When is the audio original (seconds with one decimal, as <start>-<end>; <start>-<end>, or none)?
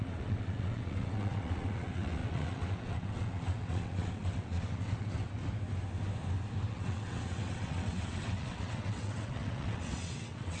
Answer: 5.4-6.7